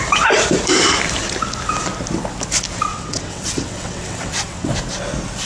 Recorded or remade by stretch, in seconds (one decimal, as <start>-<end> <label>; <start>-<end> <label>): 0.0-2.9 recorded; 2.9-4.7 remade; 4.7-5.5 recorded